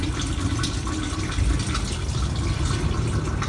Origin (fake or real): real